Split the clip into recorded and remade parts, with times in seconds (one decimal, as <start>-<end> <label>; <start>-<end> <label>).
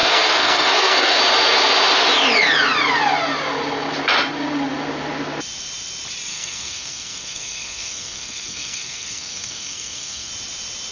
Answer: 0.0-1.2 remade; 1.2-6.3 recorded; 6.3-10.3 remade; 10.3-10.9 recorded